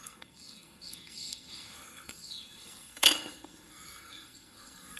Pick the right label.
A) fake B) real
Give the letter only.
A